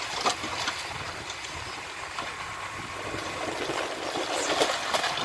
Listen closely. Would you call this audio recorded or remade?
recorded